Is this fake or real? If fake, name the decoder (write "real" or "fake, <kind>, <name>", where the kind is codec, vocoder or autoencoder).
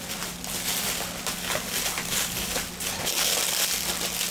real